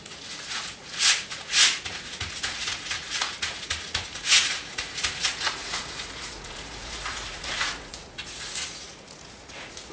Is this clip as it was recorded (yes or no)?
no